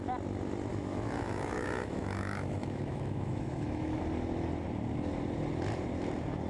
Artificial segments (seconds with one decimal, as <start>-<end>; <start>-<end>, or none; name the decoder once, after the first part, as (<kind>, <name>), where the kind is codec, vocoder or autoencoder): 0.7-4.0 (autoencoder, DAC-VAE)